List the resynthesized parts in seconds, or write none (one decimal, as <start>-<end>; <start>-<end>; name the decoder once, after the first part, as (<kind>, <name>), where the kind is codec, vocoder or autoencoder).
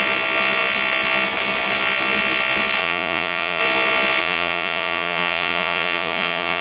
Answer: 2.8-3.6 (vocoder, Vocos); 4.2-6.6